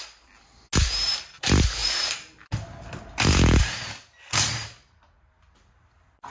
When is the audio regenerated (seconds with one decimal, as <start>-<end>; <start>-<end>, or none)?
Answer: none